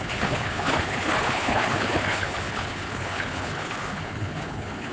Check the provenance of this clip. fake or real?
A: fake